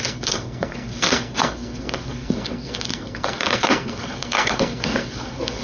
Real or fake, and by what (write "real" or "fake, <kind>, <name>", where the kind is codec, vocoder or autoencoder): fake, codec, SNAC